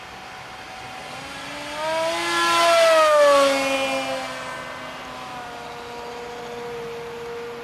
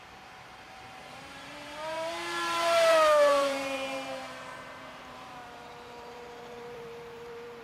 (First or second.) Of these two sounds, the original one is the first